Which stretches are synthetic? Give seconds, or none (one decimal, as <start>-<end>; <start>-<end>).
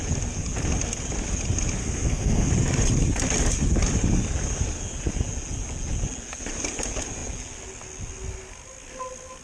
1.8-2.5